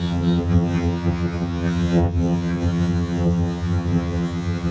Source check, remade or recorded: remade